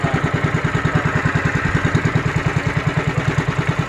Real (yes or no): yes